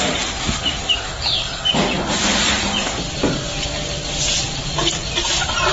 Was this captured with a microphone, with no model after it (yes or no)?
no